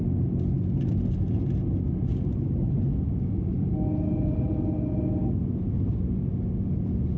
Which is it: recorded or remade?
recorded